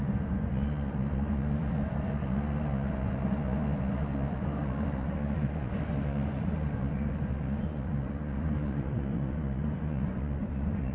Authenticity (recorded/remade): remade